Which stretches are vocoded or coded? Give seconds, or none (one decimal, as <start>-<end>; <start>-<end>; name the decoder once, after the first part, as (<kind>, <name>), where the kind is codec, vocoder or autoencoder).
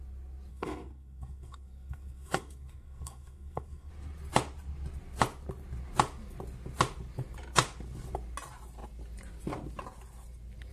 0.5-3.9 (codec, SNAC)